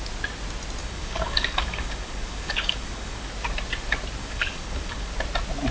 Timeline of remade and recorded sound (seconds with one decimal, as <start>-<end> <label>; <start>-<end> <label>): 0.0-0.8 recorded; 0.8-3.3 remade; 3.3-4.2 recorded; 4.2-5.1 remade; 5.1-5.7 recorded